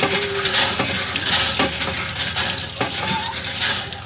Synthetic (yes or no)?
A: no